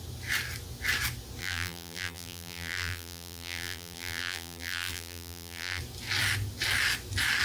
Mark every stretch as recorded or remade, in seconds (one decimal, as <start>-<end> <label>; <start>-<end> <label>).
0.0-1.4 recorded; 1.4-5.8 remade; 5.8-7.4 recorded